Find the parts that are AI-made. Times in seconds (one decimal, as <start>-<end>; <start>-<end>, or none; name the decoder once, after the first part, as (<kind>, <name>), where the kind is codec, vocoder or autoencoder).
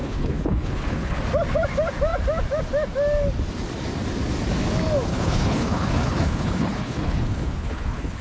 0.0-1.2 (codec, HILCodec); 5.1-8.2